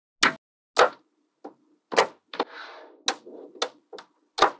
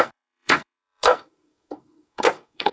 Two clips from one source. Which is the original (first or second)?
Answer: first